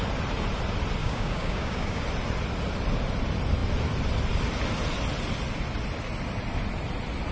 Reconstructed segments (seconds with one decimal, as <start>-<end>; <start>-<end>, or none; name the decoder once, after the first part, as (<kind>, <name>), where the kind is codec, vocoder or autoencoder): 1.0-2.0 (codec, DAC)

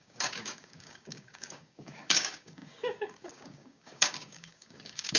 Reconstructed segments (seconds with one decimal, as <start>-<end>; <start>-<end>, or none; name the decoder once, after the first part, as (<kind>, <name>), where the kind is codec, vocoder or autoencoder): 0.0-5.2 (codec, DAC)

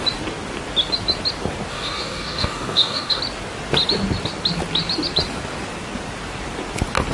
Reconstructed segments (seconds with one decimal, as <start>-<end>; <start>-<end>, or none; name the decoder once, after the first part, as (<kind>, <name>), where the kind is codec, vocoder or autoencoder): 1.7-3.2 (codec, DAC)

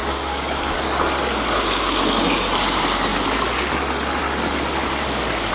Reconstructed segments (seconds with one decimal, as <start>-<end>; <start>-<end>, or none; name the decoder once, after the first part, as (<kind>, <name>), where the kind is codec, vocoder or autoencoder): 0.0-0.6 (codec, DAC)

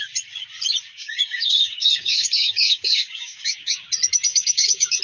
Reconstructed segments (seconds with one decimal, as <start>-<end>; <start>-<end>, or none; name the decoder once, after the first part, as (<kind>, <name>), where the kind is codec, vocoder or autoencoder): 0.9-3.9 (codec, DAC); 4.3-5.0

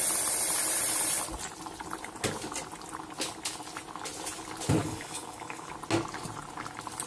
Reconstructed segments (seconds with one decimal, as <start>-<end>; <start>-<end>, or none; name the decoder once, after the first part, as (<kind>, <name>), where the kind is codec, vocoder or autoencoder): 4.8-5.7 (codec, DAC)